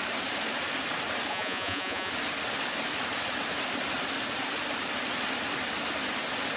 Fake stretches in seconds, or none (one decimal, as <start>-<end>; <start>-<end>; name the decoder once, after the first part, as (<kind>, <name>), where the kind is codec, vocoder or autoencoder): 1.3-2.1 (vocoder, Vocos)